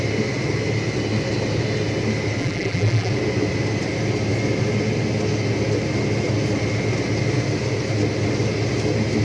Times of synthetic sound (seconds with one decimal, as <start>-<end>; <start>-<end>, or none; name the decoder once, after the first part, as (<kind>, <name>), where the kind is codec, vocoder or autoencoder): 2.4-3.1 (vocoder, BigVGAN v2)